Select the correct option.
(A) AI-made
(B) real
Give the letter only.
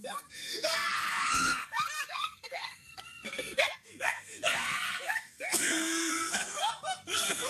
A